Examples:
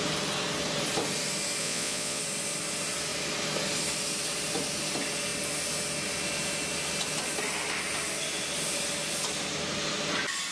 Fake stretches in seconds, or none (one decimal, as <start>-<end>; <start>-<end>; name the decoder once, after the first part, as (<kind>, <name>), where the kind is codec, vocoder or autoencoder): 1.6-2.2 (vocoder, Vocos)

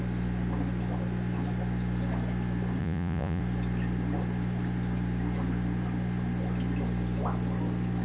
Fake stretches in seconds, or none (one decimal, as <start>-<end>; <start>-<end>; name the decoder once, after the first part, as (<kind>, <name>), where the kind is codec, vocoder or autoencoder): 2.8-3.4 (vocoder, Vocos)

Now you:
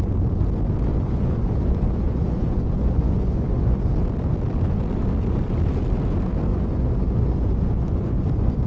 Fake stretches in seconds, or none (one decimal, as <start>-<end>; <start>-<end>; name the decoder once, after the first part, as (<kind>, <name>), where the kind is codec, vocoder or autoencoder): 0.9-3.9 (vocoder, Vocos); 6.5-8.7

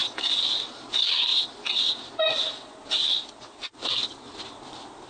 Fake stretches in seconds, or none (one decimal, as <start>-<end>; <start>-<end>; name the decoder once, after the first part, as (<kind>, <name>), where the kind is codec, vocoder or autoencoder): none

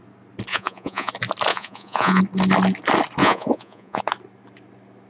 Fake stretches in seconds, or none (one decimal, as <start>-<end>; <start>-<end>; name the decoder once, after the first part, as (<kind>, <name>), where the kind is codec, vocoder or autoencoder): 0.5-1.1 (vocoder, Vocos); 1.5-2.2; 3.2-4.0

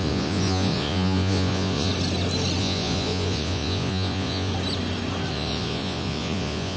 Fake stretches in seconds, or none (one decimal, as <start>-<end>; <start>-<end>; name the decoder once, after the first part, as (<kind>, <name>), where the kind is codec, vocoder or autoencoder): 0.0-1.9 (vocoder, Vocos); 2.6-4.5; 5.3-6.8

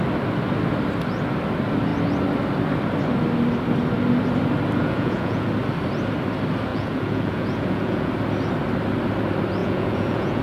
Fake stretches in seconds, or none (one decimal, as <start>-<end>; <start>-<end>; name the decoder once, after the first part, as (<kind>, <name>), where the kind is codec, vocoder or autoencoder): 4.8-5.5 (vocoder, Vocos); 6.7-8.1; 9.6-10.4

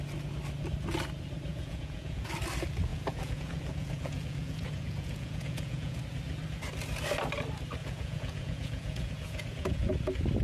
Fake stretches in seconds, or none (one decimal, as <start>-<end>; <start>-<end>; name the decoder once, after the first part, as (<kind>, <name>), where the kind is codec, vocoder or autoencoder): 1.5-2.3 (vocoder, Vocos); 2.9-6.0; 7.8-9.9